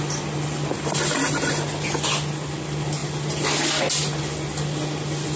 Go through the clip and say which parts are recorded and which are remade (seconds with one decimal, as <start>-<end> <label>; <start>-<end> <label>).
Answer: 0.0-5.4 recorded